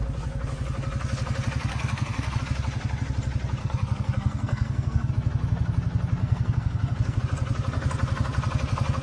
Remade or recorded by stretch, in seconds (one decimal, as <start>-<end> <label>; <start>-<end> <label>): 0.0-1.7 recorded; 1.7-2.4 remade; 2.4-3.6 recorded; 3.6-5.1 remade; 5.1-6.2 recorded; 6.2-7.2 remade; 7.2-9.0 recorded

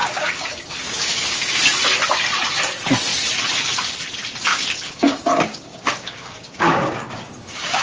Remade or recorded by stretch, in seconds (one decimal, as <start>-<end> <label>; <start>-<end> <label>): 0.0-1.6 remade; 1.6-4.5 recorded; 4.5-7.8 remade

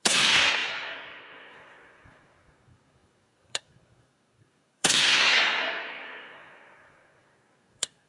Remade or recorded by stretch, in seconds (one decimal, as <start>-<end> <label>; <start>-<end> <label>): 0.0-8.1 remade

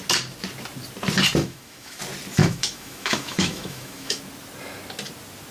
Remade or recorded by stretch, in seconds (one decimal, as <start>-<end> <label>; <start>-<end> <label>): 0.0-1.4 recorded; 1.4-2.0 remade; 2.0-2.4 recorded; 2.4-4.2 remade; 4.2-5.5 recorded

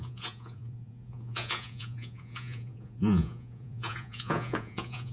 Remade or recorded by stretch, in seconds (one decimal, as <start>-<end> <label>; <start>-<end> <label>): 0.0-5.1 remade